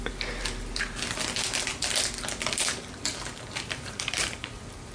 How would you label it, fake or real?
real